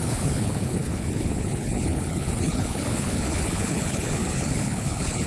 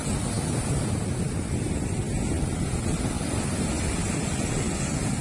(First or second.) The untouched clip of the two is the second